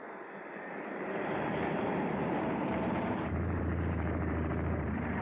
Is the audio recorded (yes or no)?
no